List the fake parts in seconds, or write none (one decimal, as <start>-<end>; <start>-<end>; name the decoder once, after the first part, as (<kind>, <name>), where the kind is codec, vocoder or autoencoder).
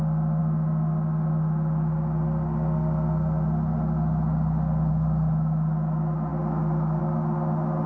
none